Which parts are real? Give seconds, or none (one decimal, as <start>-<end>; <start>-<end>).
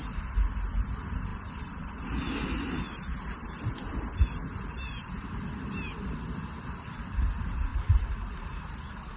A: 0.0-7.7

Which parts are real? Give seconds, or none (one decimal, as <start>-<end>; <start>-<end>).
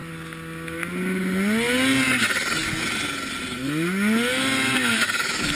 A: 0.0-4.8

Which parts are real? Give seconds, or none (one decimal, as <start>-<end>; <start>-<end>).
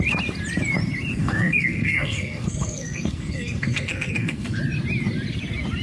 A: 0.0-1.1; 4.6-5.8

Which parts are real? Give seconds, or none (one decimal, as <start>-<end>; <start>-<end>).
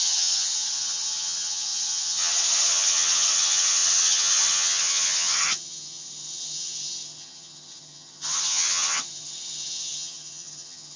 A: none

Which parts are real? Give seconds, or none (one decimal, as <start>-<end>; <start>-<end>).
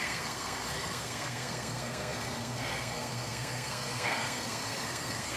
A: none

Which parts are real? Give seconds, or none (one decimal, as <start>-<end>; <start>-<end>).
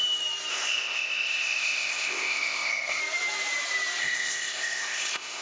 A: 0.0-0.5; 3.0-4.0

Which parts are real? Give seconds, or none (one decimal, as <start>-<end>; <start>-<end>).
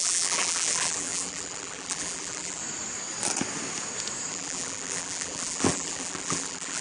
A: 2.6-4.3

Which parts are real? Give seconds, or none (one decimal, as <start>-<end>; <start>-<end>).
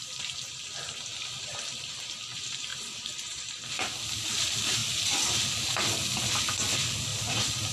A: 0.0-1.1; 2.1-2.7; 3.6-4.8; 5.9-7.7